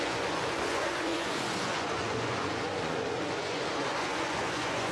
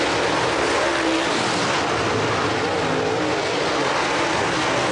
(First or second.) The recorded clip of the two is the second